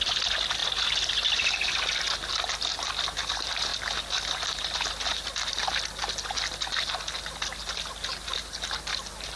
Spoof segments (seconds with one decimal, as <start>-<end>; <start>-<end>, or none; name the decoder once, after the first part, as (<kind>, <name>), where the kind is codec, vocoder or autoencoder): none